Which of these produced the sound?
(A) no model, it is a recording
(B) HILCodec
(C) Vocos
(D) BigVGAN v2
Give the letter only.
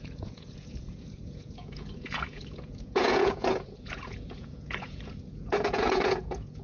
C